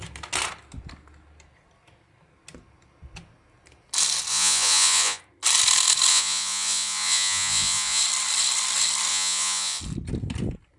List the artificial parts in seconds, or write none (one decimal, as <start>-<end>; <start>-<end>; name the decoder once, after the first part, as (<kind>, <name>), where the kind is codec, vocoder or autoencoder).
4.3-5.2 (vocoder, Vocos); 6.1-8.0; 9.1-9.8